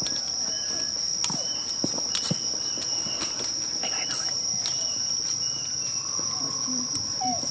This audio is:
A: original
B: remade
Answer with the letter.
A